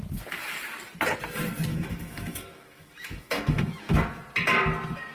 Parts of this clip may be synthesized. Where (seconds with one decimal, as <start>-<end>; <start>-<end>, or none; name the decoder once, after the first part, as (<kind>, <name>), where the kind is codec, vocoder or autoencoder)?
1.7-4.0 (autoencoder, DAC-VAE)